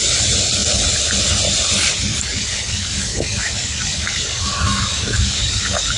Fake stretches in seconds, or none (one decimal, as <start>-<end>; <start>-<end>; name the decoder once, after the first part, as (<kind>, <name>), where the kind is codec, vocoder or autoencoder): 2.1-6.0 (codec, DAC)